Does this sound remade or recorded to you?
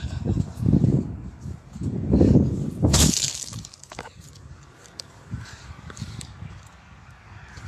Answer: remade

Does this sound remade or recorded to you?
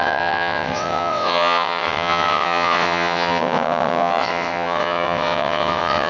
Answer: remade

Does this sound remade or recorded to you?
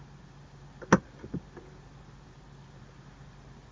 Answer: recorded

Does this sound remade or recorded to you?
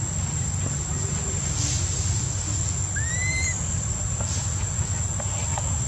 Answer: recorded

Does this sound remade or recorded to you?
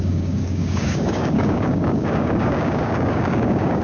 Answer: remade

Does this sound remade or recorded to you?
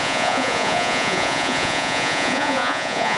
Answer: remade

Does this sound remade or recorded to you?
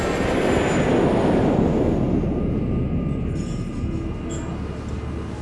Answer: recorded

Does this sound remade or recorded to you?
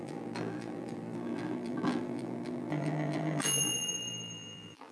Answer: remade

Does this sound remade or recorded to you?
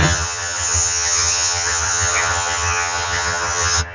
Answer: remade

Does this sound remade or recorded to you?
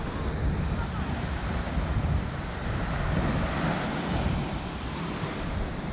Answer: recorded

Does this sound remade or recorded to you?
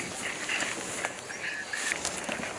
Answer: recorded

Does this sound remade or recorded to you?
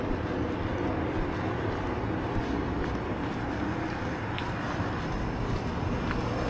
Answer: recorded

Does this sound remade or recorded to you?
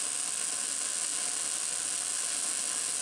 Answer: recorded